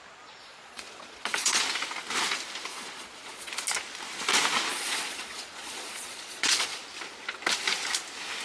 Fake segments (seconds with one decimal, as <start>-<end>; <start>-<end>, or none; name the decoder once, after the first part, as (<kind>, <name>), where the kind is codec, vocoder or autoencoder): 0.4-1.6 (vocoder, Vocos); 2.7-3.5; 4.7-6.8